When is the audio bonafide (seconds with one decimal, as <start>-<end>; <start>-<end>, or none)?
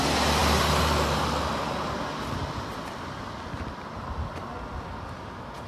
0.0-5.7